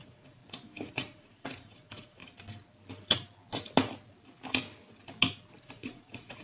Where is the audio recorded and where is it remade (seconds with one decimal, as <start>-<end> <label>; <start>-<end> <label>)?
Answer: 0.0-0.4 remade; 0.4-0.9 recorded; 0.9-2.2 remade; 2.2-5.6 recorded; 5.6-6.4 remade